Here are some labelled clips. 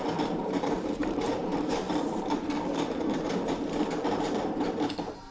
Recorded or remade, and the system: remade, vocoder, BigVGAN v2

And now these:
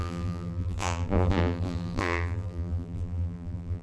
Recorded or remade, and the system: remade, vocoder, BigVGAN v2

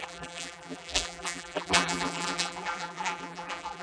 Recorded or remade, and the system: remade, vocoder, BigVGAN v2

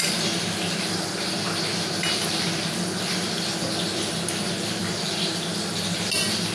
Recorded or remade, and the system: recorded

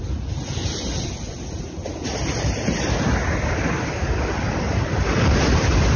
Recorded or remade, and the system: recorded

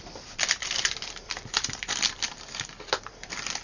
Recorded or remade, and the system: remade, vocoder, BigVGAN v2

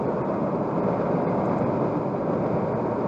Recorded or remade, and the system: recorded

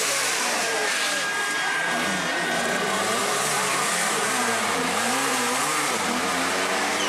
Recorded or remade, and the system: remade, vocoder, BigVGAN v2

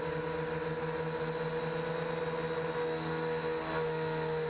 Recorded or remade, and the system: recorded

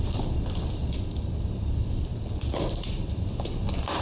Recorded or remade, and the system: remade, vocoder, BigVGAN v2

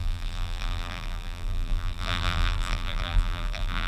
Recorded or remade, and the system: remade, vocoder, BigVGAN v2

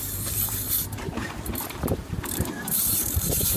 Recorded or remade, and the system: remade, vocoder, BigVGAN v2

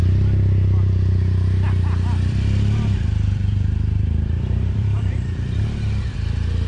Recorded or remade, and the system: remade, vocoder, BigVGAN v2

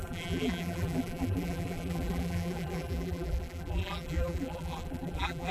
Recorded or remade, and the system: remade, vocoder, BigVGAN v2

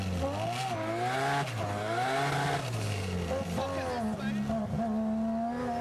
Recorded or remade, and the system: recorded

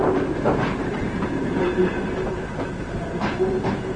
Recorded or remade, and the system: remade, vocoder, BigVGAN v2